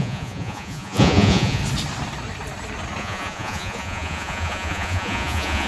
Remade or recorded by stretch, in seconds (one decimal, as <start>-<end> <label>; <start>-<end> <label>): 0.0-1.6 remade; 1.6-3.0 recorded; 3.0-5.7 remade